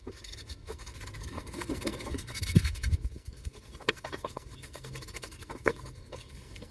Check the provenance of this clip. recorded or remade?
remade